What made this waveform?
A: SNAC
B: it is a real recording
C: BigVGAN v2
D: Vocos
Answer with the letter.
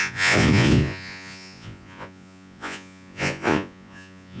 D